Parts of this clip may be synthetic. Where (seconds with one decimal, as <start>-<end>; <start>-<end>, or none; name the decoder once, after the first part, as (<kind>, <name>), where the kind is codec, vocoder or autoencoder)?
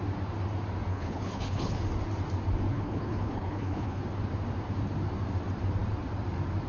0.9-1.8 (codec, HILCodec); 2.7-4.0